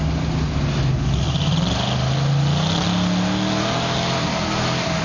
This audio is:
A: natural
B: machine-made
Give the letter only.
A